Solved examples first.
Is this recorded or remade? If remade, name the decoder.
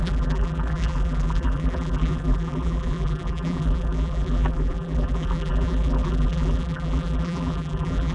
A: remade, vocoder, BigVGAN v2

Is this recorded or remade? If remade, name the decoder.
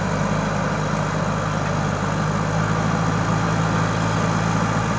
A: recorded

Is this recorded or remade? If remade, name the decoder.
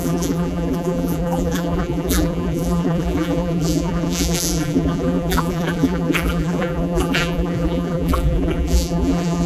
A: remade, vocoder, BigVGAN v2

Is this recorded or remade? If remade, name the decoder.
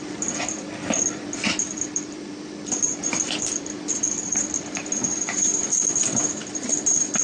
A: remade, vocoder, BigVGAN v2